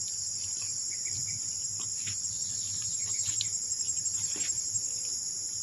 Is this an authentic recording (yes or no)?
no